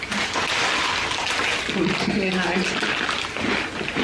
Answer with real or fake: real